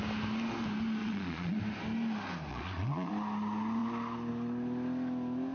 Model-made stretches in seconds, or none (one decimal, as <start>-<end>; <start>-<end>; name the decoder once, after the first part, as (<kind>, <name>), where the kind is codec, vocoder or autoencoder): 1.0-1.6 (vocoder, Vocos); 2.5-3.1